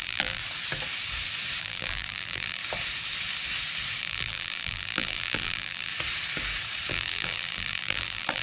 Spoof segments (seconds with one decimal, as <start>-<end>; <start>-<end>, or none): 0.0-0.4; 1.6-2.6; 4.0-5.9; 6.9-8.4